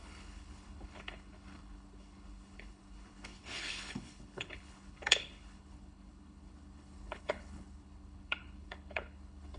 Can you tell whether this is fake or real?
fake